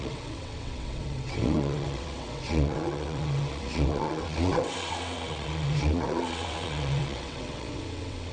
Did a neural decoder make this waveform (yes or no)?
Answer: yes